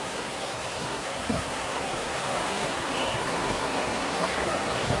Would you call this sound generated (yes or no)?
yes